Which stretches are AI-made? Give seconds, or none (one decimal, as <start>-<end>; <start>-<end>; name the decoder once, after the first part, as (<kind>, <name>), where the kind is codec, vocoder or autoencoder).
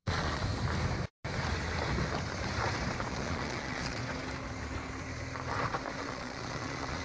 0.0-0.4 (vocoder, Vocos); 3.1-4.0; 6.0-7.0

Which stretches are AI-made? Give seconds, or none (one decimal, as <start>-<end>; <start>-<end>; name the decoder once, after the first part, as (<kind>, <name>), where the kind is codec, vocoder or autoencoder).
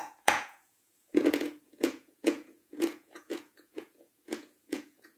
0.0-5.2 (vocoder, Vocos)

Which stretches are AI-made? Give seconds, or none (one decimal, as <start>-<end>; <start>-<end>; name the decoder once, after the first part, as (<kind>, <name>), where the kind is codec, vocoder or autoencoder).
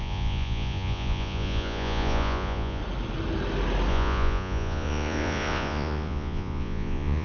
0.0-2.8 (vocoder, Vocos); 3.9-7.2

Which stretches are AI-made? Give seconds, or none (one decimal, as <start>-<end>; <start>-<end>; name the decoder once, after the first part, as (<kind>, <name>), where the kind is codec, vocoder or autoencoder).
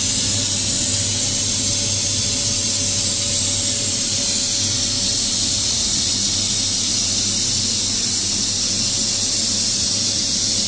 5.6-6.1 (vocoder, Vocos)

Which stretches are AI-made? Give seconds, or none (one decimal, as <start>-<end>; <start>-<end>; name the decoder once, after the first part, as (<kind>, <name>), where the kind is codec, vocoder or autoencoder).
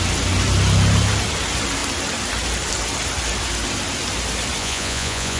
4.6-5.4 (vocoder, Vocos)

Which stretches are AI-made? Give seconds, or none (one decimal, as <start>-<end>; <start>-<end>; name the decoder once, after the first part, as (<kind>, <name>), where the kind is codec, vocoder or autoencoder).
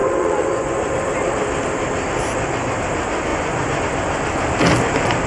0.0-0.9 (vocoder, Vocos); 3.3-3.8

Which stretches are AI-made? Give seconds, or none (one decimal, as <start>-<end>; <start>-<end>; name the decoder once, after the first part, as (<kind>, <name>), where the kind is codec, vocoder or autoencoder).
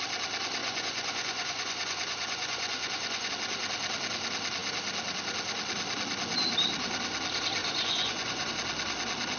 0.6-3.3 (vocoder, Vocos); 7.6-8.5